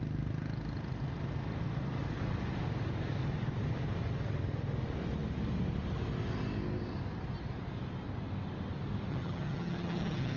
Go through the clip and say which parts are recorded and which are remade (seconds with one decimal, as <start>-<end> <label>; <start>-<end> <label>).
0.0-9.1 recorded; 9.1-10.4 remade